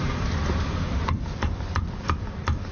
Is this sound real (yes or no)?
no